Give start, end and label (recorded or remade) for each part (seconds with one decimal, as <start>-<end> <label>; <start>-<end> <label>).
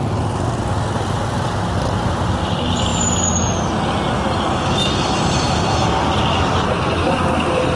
0.0-7.8 recorded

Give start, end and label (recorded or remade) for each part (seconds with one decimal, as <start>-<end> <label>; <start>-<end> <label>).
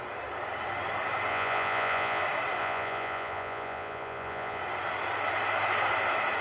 0.0-1.3 recorded; 1.3-2.2 remade; 2.2-2.6 recorded; 2.6-4.6 remade; 4.6-6.4 recorded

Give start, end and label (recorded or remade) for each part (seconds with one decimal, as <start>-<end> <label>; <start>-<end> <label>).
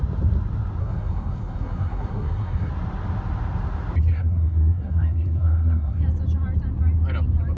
0.0-0.8 recorded; 0.8-2.7 remade; 2.7-4.1 recorded; 4.1-6.0 remade; 6.0-7.6 recorded